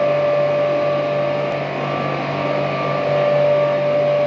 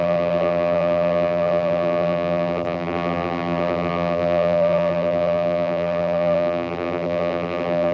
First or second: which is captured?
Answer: first